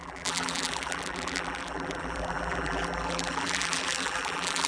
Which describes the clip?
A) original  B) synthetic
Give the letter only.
B